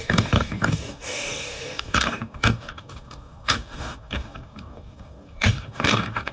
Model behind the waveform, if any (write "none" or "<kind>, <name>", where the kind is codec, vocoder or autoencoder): codec, DAC